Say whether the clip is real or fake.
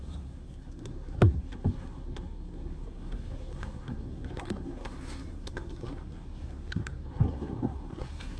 fake